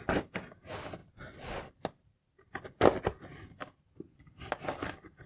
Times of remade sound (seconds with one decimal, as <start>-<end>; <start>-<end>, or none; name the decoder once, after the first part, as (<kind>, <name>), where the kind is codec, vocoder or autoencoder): none